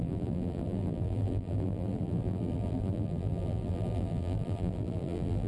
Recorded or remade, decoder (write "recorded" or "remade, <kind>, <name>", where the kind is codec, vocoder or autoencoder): remade, vocoder, BigVGAN v2